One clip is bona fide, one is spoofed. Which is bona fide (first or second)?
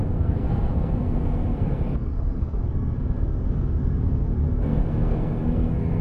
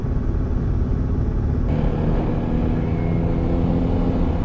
second